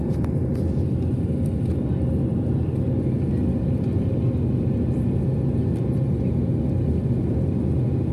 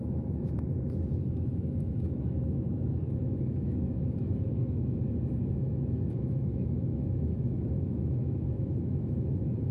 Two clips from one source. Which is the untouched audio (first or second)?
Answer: first